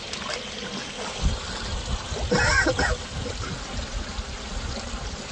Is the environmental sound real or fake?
real